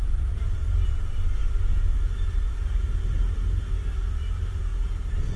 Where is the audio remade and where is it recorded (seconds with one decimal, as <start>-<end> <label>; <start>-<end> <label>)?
0.0-1.4 recorded; 1.4-3.2 remade; 3.2-5.4 recorded